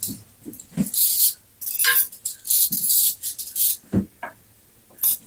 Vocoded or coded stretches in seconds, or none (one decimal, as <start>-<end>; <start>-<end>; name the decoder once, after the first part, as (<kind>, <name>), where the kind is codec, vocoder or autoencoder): none